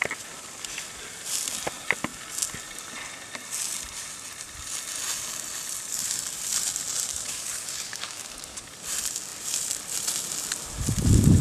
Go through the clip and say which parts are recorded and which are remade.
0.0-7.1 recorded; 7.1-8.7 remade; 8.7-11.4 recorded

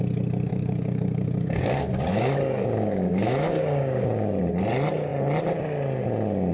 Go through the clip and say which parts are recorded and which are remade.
0.0-0.5 recorded; 0.5-4.4 remade; 4.4-6.5 recorded

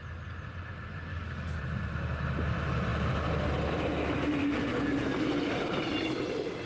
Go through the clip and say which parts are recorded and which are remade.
0.0-1.1 recorded; 1.1-1.6 remade; 1.6-6.7 recorded

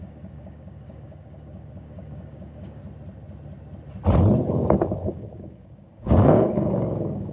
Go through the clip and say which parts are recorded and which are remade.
0.0-2.8 remade; 2.8-4.5 recorded; 4.5-7.3 remade

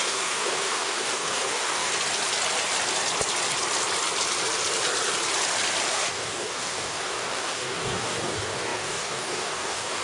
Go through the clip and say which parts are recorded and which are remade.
0.0-1.9 remade; 1.9-5.9 recorded; 5.9-10.0 remade